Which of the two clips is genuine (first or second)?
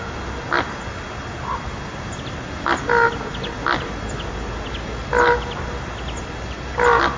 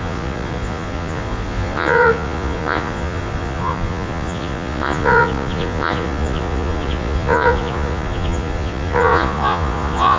first